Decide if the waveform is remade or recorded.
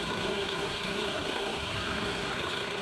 remade